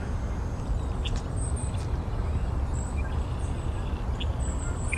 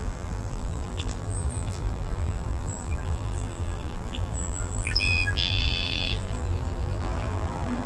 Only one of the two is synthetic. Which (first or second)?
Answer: second